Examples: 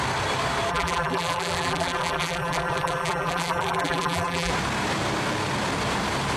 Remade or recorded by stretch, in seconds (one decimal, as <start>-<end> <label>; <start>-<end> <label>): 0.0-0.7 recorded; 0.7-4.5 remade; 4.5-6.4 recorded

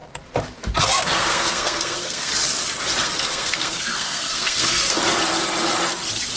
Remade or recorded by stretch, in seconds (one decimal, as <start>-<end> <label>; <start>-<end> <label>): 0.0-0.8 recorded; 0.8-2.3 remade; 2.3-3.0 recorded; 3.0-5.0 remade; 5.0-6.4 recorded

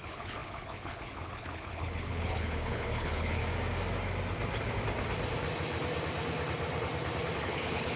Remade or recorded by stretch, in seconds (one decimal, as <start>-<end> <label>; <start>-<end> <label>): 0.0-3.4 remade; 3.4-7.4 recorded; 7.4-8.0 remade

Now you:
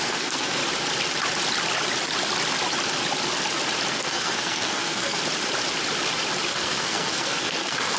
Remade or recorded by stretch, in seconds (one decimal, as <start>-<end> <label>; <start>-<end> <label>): 0.0-0.6 remade; 0.6-3.9 recorded; 3.9-5.2 remade; 5.2-6.5 recorded; 6.5-8.0 remade

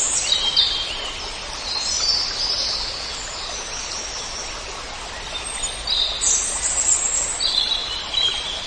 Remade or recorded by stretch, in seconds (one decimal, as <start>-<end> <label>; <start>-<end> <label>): 0.0-7.8 recorded; 7.8-8.7 remade

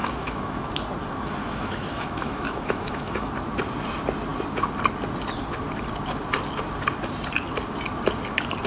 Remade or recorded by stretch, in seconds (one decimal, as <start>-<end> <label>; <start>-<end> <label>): 0.0-0.7 remade; 0.7-1.4 recorded; 1.4-3.3 remade; 3.3-8.7 recorded

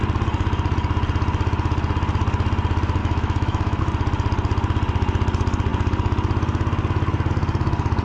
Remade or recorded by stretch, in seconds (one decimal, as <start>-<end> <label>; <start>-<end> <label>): 0.0-3.0 recorded; 3.0-3.8 remade; 3.8-8.0 recorded